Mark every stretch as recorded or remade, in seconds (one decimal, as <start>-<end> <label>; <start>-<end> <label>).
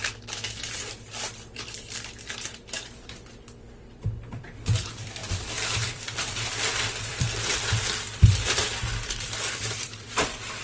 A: 0.0-0.7 recorded; 0.7-10.6 remade